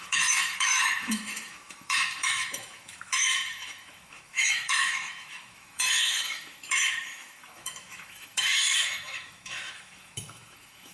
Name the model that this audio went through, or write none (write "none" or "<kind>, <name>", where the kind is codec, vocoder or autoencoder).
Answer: autoencoder, DAC-VAE